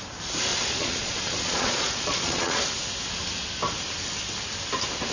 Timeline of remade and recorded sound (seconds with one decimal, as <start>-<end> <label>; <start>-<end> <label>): 0.0-0.5 recorded; 0.5-2.6 remade; 2.6-5.1 recorded